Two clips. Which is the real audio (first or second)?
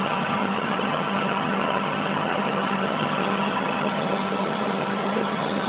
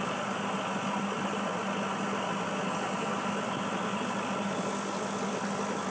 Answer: second